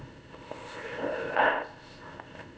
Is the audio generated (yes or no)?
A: yes